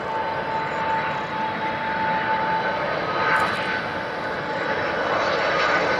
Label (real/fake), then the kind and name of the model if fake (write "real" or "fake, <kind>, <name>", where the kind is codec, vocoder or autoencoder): real